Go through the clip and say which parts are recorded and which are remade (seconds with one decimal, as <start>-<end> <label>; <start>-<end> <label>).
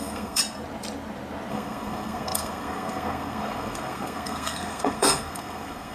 0.0-0.4 remade; 0.4-1.5 recorded; 1.5-5.9 remade